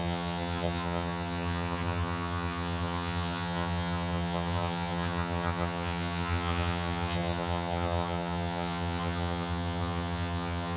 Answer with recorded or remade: remade